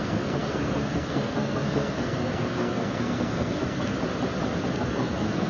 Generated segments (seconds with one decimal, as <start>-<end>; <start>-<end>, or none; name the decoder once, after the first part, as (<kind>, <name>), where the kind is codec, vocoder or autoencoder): 0.0-3.9 (codec, SNAC); 4.7-5.5